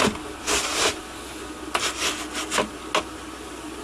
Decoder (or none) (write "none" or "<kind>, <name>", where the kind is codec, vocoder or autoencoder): none